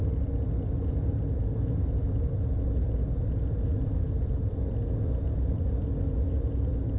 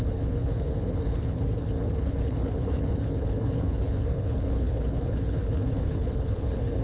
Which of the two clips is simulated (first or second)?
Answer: second